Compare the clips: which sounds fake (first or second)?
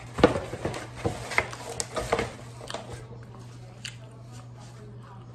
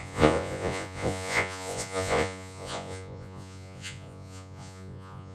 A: second